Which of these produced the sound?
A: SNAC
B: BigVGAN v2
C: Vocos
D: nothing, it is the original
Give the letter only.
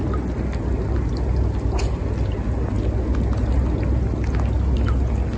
D